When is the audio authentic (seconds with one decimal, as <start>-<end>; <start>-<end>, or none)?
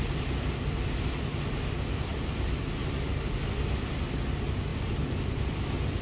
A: 0.0-2.1; 2.6-4.7; 5.6-6.0